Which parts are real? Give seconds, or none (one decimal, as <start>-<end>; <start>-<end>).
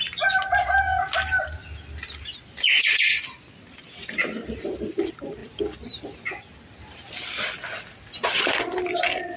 0.0-9.4